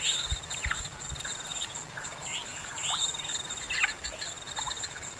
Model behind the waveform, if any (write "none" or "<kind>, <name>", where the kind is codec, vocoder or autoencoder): none